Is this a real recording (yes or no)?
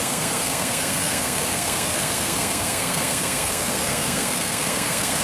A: no